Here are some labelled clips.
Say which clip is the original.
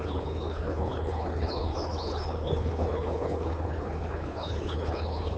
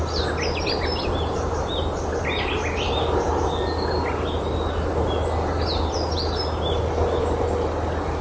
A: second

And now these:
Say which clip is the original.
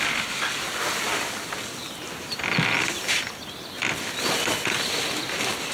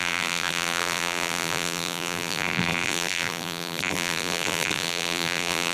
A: first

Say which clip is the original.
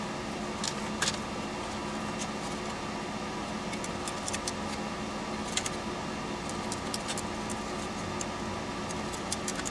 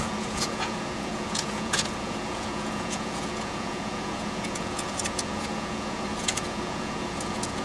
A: first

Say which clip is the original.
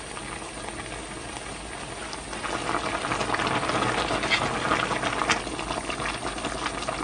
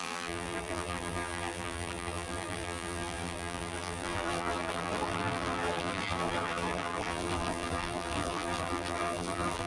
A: first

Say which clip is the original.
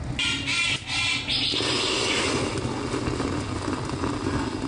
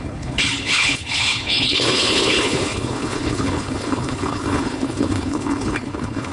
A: first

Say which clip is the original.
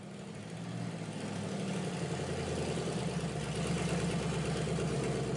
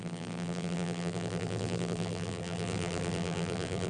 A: first